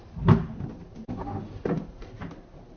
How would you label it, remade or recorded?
recorded